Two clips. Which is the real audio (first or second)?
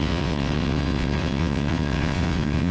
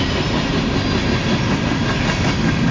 second